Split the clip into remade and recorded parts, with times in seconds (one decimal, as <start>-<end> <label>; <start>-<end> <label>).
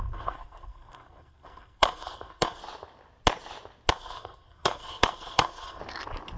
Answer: 0.0-2.6 remade; 2.6-3.9 recorded; 3.9-5.8 remade; 5.8-6.4 recorded